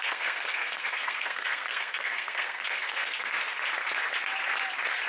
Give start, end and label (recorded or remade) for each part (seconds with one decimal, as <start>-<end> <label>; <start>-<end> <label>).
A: 0.0-3.4 remade; 3.4-5.1 recorded